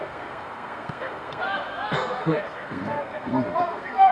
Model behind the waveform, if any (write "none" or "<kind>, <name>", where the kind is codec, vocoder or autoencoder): codec, SNAC